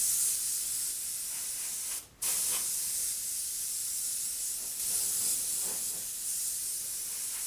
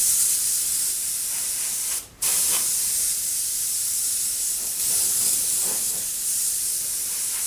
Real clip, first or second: first